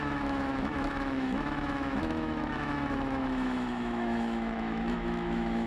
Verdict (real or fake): fake